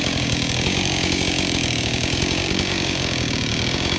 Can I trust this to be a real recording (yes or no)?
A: no